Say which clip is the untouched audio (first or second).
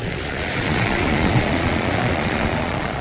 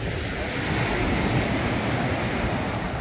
second